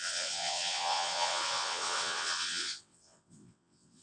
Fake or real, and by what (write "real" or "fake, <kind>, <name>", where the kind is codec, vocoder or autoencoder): fake, vocoder, WaveNeXt